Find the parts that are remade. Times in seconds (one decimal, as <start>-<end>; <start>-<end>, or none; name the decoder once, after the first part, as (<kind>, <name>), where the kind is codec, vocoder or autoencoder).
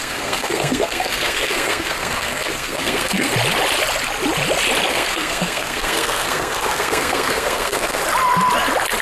0.0-3.3 (codec, SNAC); 4.9-8.0